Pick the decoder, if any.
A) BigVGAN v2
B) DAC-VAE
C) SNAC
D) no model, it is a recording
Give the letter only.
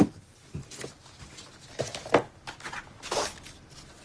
D